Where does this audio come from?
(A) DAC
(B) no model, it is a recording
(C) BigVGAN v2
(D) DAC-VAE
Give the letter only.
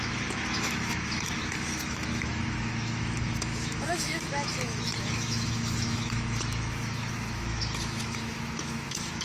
D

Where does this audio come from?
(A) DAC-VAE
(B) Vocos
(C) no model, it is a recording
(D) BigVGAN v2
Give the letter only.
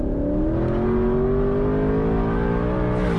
C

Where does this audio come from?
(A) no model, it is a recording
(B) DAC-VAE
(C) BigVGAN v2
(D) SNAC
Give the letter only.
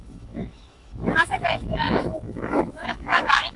B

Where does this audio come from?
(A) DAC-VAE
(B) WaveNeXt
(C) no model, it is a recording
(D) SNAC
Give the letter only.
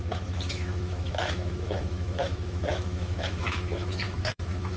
A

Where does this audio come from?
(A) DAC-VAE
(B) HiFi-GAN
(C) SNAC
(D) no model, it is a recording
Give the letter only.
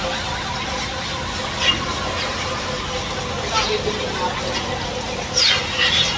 D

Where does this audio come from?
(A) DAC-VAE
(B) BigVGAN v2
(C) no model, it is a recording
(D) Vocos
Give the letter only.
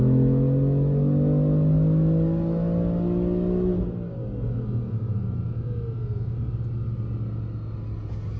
C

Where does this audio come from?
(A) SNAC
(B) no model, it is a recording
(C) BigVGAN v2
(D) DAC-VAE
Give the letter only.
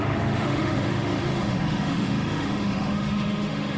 D